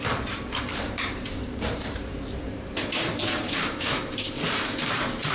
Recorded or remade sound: remade